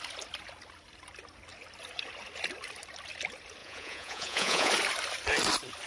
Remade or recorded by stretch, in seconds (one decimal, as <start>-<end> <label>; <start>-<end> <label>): 0.0-3.6 recorded; 3.6-4.7 remade; 4.7-5.9 recorded